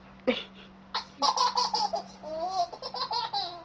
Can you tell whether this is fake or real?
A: real